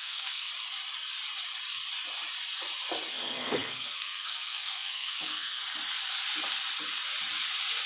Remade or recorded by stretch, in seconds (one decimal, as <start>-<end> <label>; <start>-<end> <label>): 0.0-0.5 remade; 0.5-3.1 recorded; 3.1-5.6 remade; 5.6-7.9 recorded